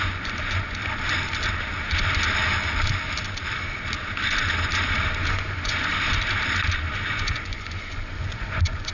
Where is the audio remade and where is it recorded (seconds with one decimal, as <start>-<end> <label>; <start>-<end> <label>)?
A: 0.0-0.8 remade; 0.8-5.3 recorded; 5.3-5.9 remade; 5.9-6.9 recorded; 6.9-8.9 remade